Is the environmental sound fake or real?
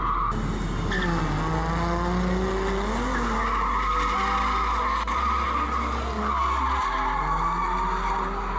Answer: real